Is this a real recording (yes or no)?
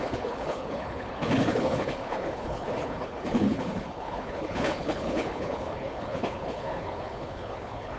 no